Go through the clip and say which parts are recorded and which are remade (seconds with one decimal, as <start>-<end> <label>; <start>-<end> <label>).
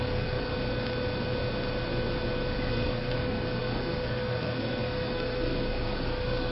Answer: 0.0-0.5 remade; 0.5-2.7 recorded; 2.7-6.5 remade